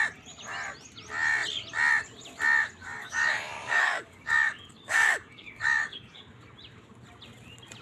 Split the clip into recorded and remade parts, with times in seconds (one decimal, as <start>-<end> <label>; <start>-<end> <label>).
0.0-2.8 recorded; 2.8-6.2 remade; 6.2-7.8 recorded